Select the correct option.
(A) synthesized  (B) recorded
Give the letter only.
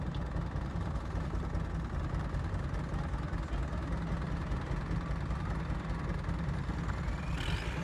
B